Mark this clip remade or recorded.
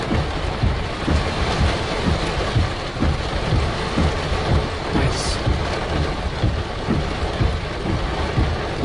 remade